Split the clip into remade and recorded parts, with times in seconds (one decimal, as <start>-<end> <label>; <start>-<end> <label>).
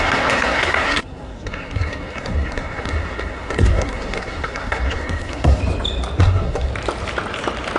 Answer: 0.0-5.6 remade; 5.6-6.2 recorded; 6.2-6.7 remade; 6.7-7.8 recorded